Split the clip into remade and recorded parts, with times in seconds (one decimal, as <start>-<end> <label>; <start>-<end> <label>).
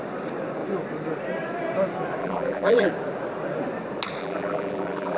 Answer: 0.0-2.2 recorded; 2.2-2.9 remade; 2.9-4.2 recorded; 4.2-5.2 remade